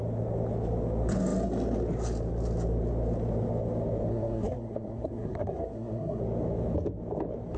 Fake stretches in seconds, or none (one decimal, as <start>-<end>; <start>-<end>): 4.1-6.2